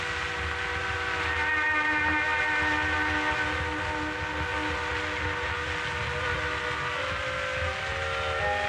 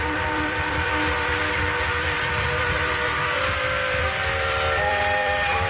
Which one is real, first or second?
first